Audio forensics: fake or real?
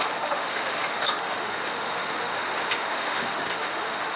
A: fake